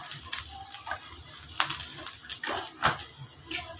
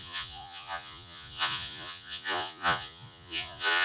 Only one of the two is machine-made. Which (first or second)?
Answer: second